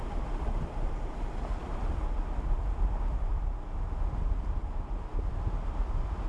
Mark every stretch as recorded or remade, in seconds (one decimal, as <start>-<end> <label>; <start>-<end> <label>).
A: 0.0-6.3 recorded